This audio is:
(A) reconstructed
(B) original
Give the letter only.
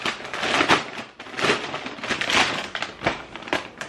B